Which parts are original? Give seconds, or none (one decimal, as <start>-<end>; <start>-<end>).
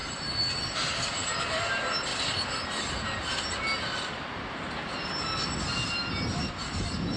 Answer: 0.0-7.2